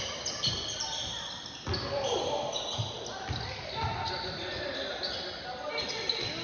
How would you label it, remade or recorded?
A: recorded